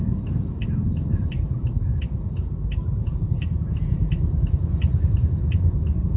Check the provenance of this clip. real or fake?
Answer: fake